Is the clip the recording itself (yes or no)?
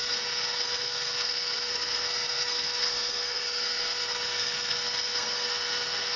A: no